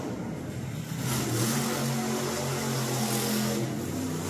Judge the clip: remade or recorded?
recorded